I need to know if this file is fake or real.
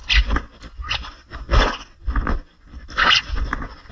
fake